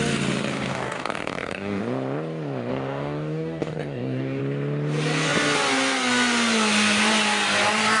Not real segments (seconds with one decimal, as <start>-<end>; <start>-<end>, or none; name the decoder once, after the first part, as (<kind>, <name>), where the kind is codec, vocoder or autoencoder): 0.5-1.8 (codec, DAC); 2.7-4.4